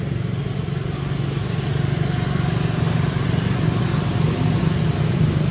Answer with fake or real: real